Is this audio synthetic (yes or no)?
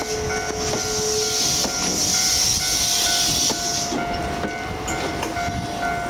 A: no